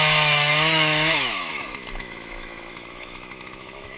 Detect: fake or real fake